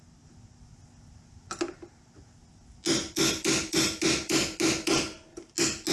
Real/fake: real